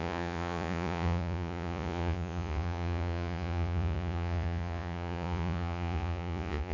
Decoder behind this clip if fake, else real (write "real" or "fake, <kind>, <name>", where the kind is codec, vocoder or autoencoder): fake, vocoder, Vocos